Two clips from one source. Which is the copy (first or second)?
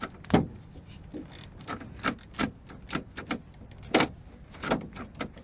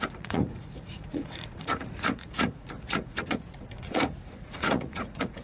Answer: second